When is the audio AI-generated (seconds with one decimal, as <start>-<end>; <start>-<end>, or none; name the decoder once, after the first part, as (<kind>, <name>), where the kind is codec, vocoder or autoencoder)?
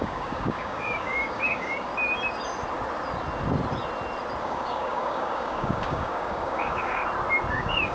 0.0-1.9 (codec, DAC); 4.4-7.0; 7.5-7.9